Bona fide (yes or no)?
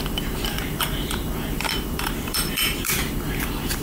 no